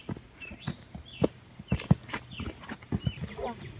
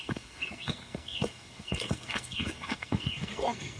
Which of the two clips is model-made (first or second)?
second